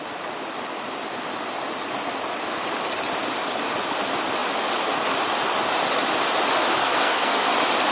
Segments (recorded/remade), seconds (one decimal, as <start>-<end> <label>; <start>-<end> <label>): 0.0-6.8 recorded; 6.8-7.5 remade; 7.5-7.9 recorded